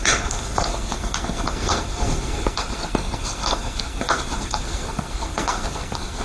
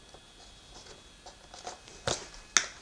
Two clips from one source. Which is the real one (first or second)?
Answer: second